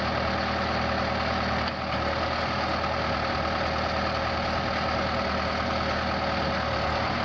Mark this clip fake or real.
real